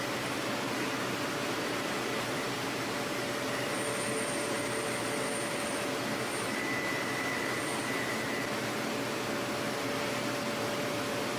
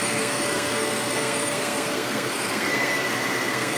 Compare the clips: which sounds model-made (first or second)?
second